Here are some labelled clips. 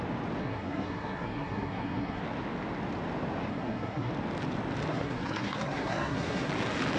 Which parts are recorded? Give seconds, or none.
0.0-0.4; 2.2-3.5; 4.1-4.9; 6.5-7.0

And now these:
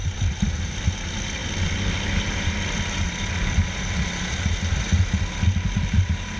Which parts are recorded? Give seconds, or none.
0.0-6.4

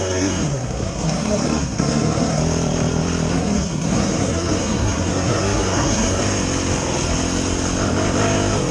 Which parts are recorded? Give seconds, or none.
2.4-3.3; 6.2-8.7

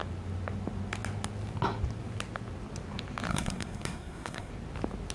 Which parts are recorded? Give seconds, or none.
0.0-3.3; 4.5-5.1

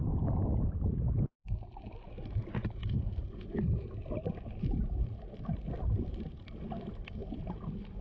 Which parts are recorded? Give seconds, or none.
0.0-8.0